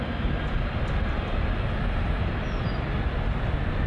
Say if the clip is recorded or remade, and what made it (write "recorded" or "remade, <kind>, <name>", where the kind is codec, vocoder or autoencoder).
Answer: recorded